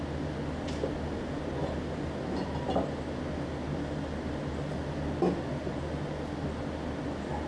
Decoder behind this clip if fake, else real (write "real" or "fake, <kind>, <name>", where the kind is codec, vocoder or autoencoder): real